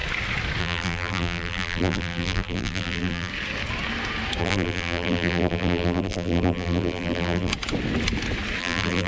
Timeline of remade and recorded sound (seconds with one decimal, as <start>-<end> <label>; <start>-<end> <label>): 0.0-0.6 recorded; 0.6-3.3 remade; 3.3-4.4 recorded; 4.4-7.5 remade; 7.5-8.6 recorded; 8.6-9.1 remade

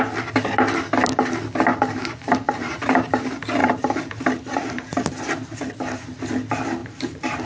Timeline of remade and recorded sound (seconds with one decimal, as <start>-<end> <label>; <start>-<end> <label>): 0.0-1.7 recorded; 1.7-2.7 remade; 2.7-3.6 recorded; 3.6-5.2 remade; 5.2-6.8 recorded; 6.8-7.5 remade